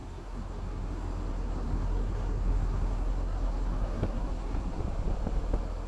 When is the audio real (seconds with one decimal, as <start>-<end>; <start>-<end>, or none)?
0.9-1.3; 4.8-5.9